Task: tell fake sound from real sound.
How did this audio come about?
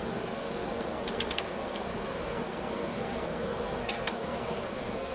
fake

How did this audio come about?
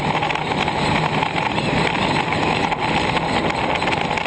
real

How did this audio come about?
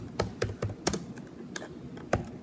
real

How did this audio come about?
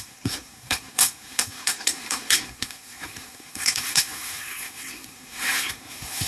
fake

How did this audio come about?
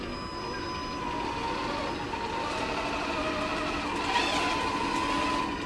real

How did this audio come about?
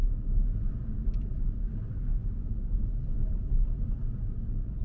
real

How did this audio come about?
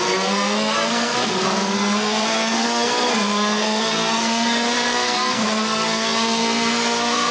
fake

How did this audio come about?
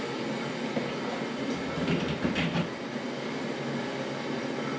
real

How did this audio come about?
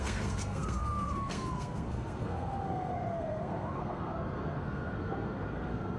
fake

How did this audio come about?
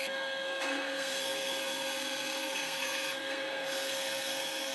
fake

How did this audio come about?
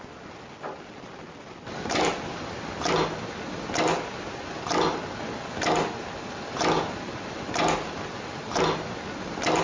real